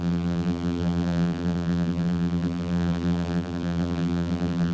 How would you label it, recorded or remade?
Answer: remade